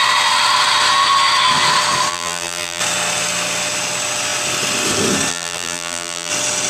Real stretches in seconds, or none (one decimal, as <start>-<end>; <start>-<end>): 0.0-2.1; 2.8-5.3; 6.3-6.7